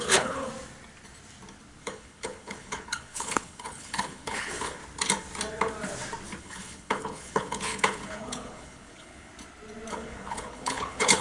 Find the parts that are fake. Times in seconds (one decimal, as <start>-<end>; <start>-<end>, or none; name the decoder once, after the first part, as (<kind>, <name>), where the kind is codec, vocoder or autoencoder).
0.0-0.5 (codec, HILCodec); 1.8-4.8; 6.4-9.3; 9.9-11.2